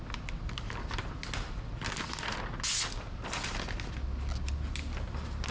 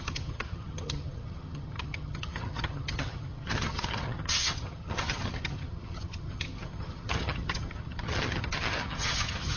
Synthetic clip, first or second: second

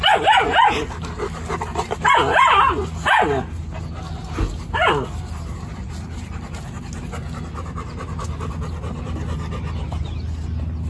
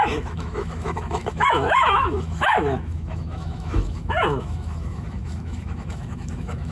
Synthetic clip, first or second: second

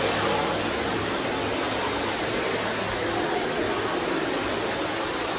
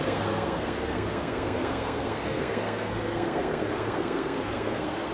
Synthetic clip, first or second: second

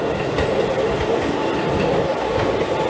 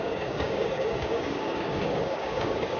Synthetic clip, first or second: second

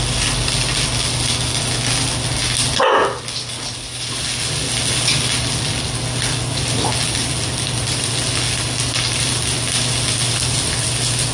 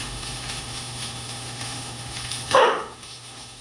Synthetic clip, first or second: second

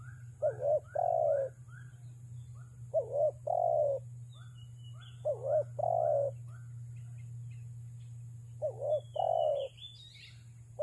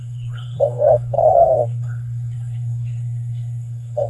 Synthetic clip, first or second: second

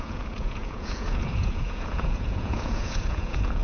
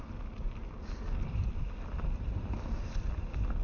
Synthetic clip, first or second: first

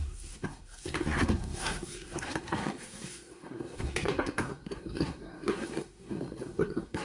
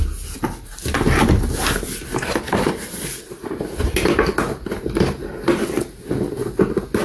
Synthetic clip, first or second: first